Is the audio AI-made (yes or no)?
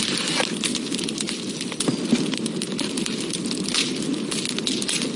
no